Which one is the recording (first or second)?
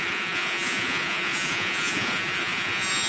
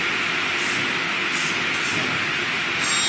second